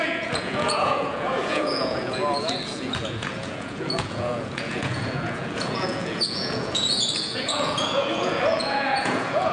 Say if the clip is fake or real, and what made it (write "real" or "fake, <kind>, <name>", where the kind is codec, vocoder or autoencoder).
fake, vocoder, Vocos